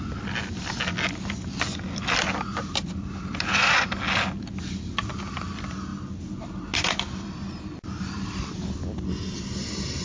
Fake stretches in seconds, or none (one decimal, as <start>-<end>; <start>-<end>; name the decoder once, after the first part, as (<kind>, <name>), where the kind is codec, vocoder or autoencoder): none